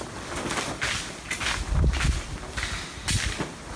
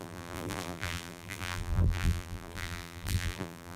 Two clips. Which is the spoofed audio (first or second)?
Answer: second